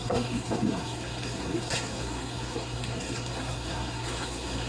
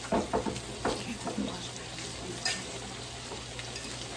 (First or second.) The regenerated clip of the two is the first